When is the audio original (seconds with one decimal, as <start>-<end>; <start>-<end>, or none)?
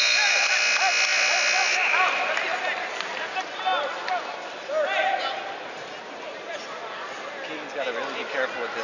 0.0-8.8